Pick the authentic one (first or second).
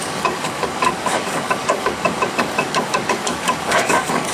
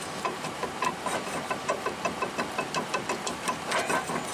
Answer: second